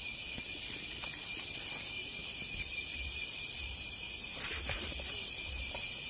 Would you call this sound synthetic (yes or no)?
no